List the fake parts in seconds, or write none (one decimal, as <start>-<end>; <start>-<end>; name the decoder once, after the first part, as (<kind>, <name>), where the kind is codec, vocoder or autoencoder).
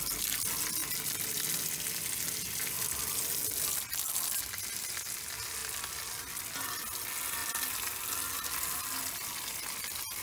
none